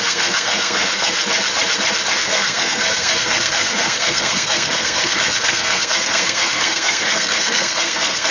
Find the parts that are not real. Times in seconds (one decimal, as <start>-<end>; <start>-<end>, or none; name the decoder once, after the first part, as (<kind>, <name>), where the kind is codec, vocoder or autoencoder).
0.0-1.2 (codec, SNAC); 2.1-8.3